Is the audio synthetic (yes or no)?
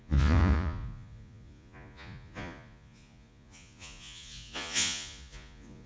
yes